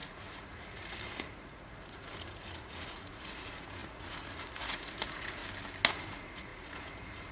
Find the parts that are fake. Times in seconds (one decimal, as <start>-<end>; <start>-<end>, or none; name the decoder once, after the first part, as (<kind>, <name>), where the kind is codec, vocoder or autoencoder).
0.0-5.4 (vocoder, Vocos); 5.9-7.3